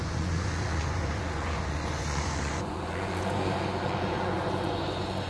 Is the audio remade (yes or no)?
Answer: yes